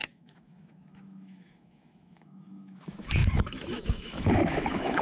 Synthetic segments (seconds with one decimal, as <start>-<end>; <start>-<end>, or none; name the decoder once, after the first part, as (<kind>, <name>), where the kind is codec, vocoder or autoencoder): 0.0-5.0 (autoencoder, DAC-VAE)